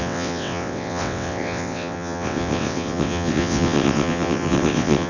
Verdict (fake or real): fake